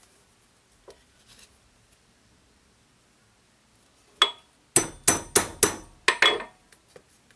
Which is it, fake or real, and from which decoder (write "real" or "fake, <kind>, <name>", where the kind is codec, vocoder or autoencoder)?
real